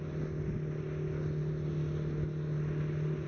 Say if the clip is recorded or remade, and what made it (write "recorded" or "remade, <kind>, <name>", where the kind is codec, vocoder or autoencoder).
recorded